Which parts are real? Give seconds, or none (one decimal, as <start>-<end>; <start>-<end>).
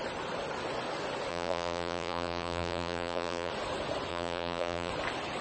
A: 0.0-1.3; 3.5-4.1; 4.9-5.4